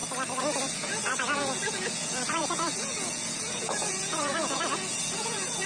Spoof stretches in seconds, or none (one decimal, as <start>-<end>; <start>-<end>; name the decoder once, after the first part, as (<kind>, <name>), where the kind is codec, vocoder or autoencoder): 0.7-5.7 (vocoder, Vocos)

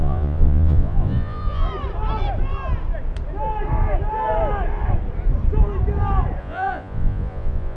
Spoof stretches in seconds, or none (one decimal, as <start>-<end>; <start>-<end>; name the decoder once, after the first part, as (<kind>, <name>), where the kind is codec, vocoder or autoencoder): 0.0-1.7 (vocoder, Vocos); 6.4-7.8

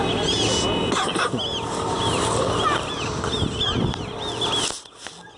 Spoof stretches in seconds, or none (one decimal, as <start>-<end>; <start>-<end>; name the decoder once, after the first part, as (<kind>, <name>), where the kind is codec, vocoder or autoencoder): none

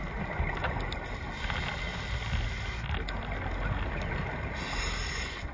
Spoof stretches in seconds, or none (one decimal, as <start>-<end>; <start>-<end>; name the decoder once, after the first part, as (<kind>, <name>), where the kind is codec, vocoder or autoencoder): none

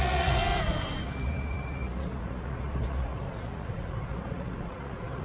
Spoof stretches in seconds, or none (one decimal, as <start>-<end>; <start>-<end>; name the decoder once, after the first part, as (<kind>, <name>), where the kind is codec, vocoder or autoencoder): 0.0-0.4 (vocoder, Vocos); 1.0-5.2

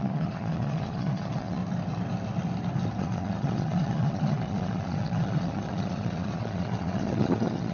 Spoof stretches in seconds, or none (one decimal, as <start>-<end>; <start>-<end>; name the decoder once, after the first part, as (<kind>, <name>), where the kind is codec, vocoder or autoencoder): 0.0-1.6 (vocoder, Vocos); 3.0-7.7

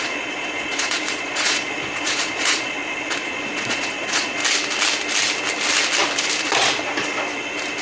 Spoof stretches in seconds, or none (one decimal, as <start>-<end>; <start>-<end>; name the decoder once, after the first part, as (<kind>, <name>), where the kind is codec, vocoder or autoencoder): 0.0-4.4 (vocoder, Vocos)

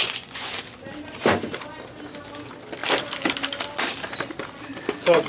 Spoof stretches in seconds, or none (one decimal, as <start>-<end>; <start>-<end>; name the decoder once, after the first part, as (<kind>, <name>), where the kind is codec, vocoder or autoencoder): 0.0-0.5 (vocoder, Vocos)